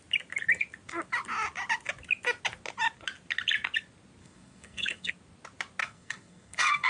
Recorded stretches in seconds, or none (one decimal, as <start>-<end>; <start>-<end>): 0.0-4.2; 5.1-5.8